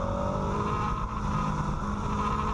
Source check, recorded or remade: recorded